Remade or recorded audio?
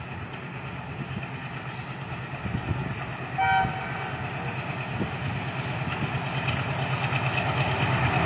recorded